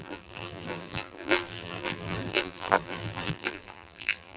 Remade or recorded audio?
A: remade